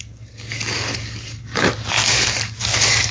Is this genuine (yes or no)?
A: no